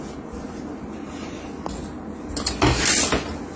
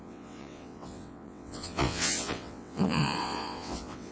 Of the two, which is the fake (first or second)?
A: second